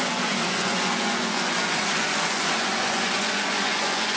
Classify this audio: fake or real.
fake